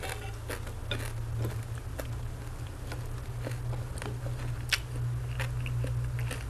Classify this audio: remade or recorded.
recorded